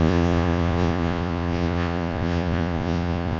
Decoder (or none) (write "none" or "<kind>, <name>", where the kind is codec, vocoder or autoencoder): vocoder, Vocos